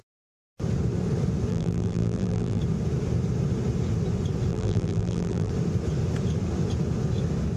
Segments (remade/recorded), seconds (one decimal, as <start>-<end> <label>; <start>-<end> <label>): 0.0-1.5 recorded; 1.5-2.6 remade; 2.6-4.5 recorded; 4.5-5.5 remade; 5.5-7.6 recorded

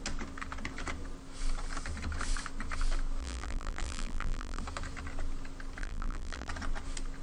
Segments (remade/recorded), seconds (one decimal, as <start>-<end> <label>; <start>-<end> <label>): 0.0-3.2 recorded; 3.2-4.6 remade; 4.6-5.8 recorded; 5.8-6.5 remade; 6.5-7.2 recorded

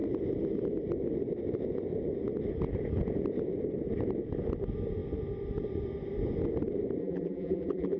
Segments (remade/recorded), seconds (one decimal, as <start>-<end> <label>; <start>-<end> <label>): 0.0-7.0 recorded; 7.0-8.0 remade

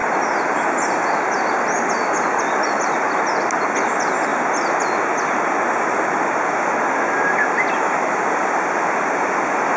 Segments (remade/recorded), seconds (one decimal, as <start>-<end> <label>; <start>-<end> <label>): 0.0-9.8 recorded